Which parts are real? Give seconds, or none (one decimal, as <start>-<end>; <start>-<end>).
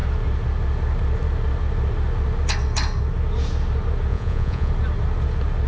0.0-4.1; 4.7-5.7